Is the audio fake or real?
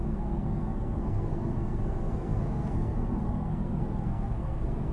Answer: fake